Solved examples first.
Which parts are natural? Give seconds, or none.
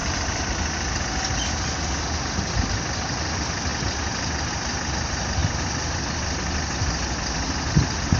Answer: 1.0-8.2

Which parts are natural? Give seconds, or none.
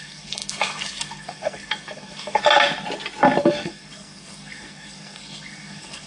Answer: 2.4-3.4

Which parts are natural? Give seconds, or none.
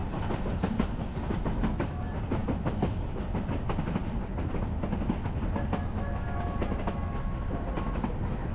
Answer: 0.0-8.5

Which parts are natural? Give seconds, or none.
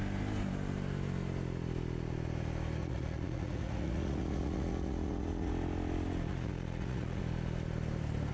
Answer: 0.0-2.8; 5.5-6.3; 7.2-8.3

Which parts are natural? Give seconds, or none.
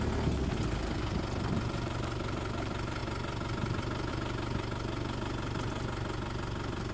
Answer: 0.0-6.9